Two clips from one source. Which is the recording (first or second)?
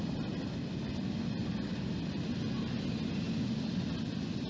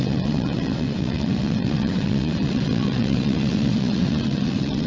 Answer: first